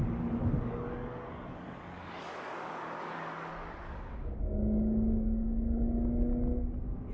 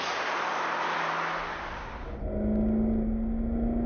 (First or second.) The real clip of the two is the second